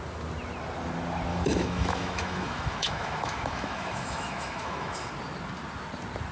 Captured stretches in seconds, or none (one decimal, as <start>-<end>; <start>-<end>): 0.0-1.3; 5.1-6.3